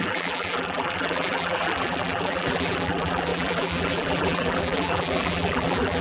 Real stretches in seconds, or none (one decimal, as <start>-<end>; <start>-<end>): none